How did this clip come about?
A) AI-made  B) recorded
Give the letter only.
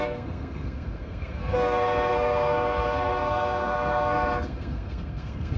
A